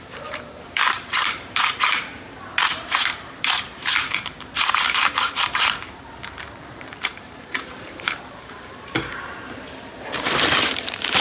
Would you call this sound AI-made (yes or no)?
yes